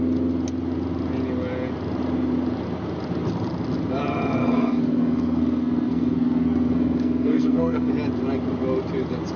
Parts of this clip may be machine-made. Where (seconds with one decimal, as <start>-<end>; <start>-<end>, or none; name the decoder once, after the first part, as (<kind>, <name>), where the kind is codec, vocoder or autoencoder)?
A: 4.4-7.9 (codec, SNAC)